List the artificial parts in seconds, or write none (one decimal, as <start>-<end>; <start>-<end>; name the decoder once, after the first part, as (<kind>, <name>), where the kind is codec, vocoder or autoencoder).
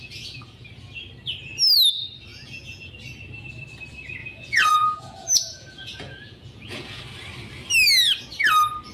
0.0-0.7 (vocoder, Vocos); 2.3-2.9; 4.2-7.0